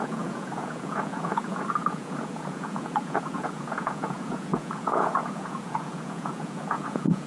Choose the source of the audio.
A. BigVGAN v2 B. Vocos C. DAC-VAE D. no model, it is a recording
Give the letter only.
B